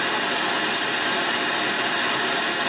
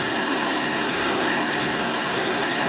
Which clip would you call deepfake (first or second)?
second